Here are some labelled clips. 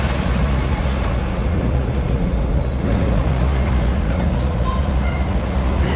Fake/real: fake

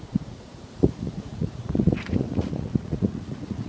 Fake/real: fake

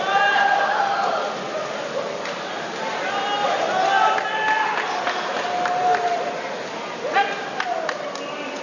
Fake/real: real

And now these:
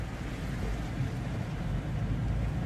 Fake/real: real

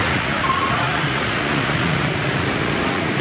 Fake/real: fake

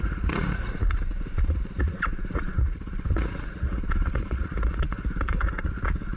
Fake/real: fake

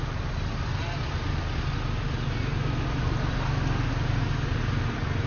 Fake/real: real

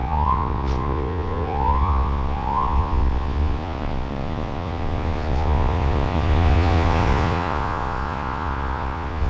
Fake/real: fake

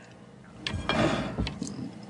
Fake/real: real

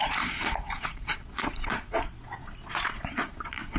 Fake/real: fake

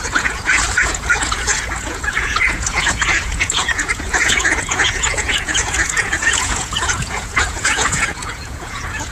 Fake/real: fake